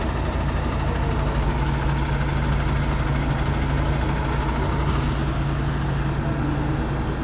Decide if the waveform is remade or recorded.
recorded